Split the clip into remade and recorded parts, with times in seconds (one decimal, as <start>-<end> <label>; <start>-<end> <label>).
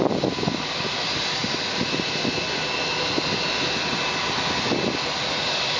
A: 0.0-5.8 recorded